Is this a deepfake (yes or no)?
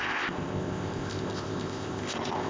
yes